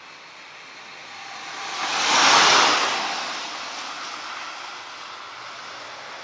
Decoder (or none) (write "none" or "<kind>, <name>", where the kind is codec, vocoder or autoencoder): none